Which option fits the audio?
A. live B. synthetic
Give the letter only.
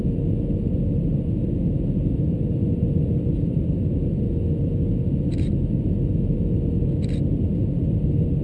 A